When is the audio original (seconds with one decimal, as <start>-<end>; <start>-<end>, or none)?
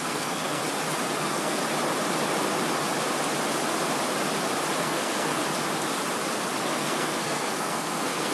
0.6-1.2; 1.6-4.8; 5.4-6.6